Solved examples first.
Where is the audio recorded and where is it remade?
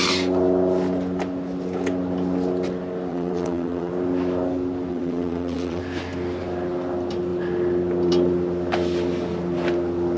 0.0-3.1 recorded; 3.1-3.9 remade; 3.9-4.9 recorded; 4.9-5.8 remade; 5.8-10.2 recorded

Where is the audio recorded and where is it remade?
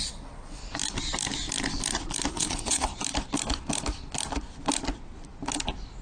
0.0-0.6 remade; 0.6-2.3 recorded; 2.3-2.9 remade; 2.9-6.0 recorded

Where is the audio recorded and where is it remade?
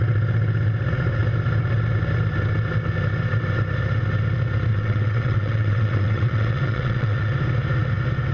0.0-4.7 recorded; 4.7-7.3 remade; 7.3-8.3 recorded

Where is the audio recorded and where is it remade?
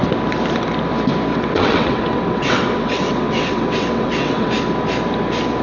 0.0-1.3 recorded; 1.3-4.5 remade; 4.5-5.6 recorded